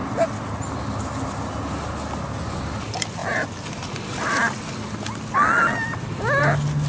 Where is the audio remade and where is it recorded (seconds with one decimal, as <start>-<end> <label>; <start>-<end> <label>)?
0.0-6.9 recorded